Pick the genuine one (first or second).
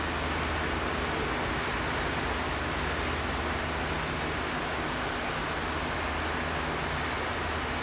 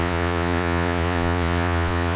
first